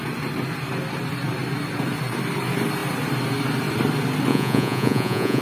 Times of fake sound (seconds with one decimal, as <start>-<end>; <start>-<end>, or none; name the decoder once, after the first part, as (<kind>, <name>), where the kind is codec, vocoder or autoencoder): 4.3-5.4 (vocoder, Vocos)